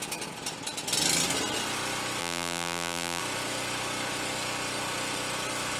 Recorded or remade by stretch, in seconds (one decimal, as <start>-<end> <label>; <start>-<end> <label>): 0.0-2.2 recorded; 2.2-3.2 remade; 3.2-5.8 recorded

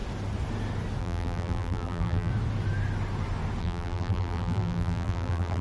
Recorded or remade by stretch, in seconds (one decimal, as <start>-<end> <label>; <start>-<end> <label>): 0.0-1.0 recorded; 1.0-2.3 remade; 2.3-3.6 recorded; 3.6-5.6 remade

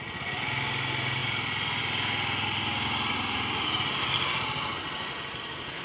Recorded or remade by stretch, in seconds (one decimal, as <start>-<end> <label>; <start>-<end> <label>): 0.0-5.8 recorded